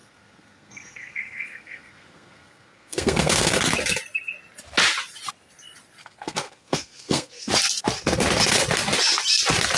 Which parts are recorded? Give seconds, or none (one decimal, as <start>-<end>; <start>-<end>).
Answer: 3.6-6.0; 7.5-9.8